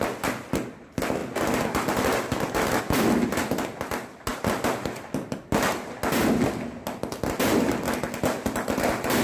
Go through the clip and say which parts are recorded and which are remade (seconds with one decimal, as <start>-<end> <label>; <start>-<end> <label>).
0.0-9.2 recorded